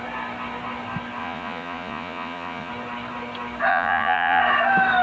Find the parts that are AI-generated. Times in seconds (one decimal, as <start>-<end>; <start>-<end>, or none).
1.2-2.7; 3.7-4.4